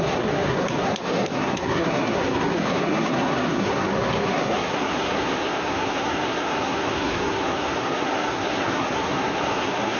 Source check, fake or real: fake